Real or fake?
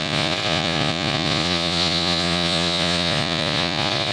fake